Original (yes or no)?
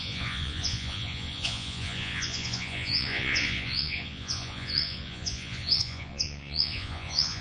no